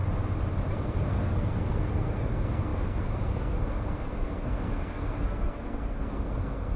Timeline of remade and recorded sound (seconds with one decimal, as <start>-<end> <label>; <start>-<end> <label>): 0.0-0.7 recorded; 0.7-6.8 remade